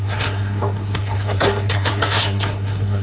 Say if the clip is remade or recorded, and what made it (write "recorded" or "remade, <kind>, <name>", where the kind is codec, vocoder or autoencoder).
remade, codec, SNAC